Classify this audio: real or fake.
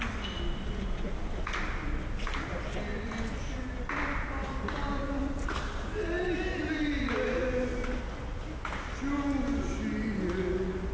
real